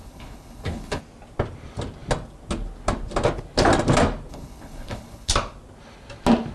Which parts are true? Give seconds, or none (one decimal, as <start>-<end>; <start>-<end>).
1.0-4.3; 5.3-6.5